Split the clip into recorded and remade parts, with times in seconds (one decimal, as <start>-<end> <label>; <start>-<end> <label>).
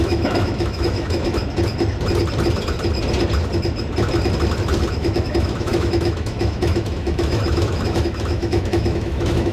0.0-1.4 remade; 1.4-5.0 recorded; 5.0-9.5 remade